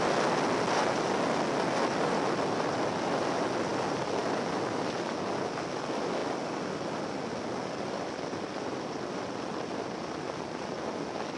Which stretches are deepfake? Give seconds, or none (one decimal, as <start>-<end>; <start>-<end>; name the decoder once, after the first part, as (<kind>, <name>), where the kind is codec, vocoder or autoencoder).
none